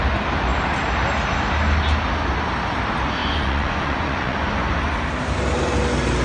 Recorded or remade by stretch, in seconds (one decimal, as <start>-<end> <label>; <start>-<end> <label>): 0.0-3.2 recorded; 3.2-4.7 remade; 4.7-6.2 recorded